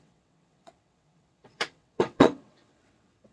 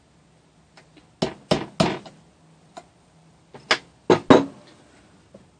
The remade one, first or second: first